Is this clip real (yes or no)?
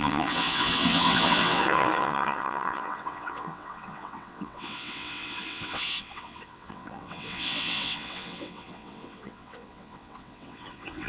no